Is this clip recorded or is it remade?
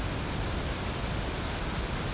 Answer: recorded